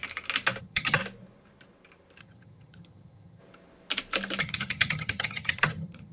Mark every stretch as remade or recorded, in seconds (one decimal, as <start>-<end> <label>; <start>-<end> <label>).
0.0-0.6 recorded; 0.6-1.0 remade; 1.0-2.2 recorded; 2.2-3.4 remade; 3.4-4.4 recorded; 4.4-6.1 remade